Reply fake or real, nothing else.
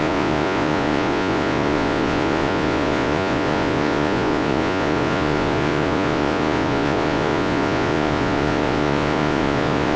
fake